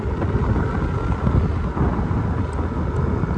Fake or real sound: real